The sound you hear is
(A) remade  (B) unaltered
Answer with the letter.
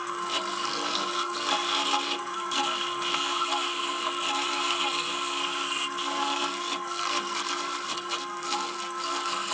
A